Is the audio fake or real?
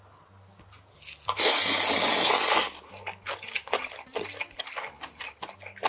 real